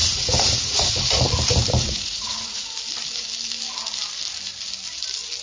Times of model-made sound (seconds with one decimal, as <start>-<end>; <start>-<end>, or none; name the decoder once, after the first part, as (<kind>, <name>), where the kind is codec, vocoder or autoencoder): 0.0-0.9 (vocoder, Vocos); 1.8-2.7

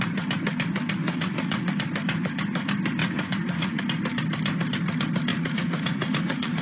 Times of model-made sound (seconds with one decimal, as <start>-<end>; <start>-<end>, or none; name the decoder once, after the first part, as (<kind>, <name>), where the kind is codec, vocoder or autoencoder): 1.0-1.7 (vocoder, Vocos); 3.0-3.8; 5.3-6.6